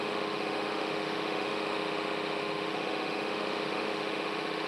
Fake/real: fake